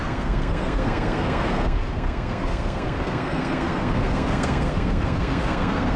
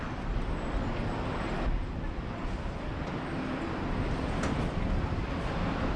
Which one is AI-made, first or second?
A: first